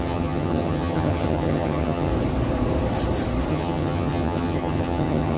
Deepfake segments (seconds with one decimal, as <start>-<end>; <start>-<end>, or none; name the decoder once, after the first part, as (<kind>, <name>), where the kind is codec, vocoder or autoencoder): 0.0-2.1 (vocoder, HiFi-GAN); 3.5-5.4